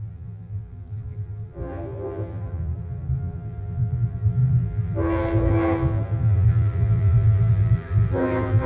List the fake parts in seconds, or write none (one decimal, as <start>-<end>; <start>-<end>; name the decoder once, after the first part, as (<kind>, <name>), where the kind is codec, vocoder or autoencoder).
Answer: 0.0-8.7 (vocoder, BigVGAN v2)